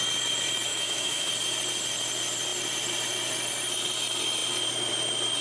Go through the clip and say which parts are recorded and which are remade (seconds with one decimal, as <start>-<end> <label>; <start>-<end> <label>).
0.0-0.7 recorded; 0.7-1.3 remade; 1.3-5.4 recorded